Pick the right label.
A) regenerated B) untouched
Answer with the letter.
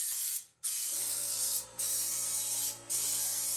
A